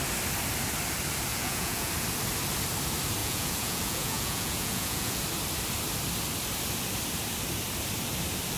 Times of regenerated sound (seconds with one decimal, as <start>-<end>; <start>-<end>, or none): 1.3-1.9; 3.2-5.2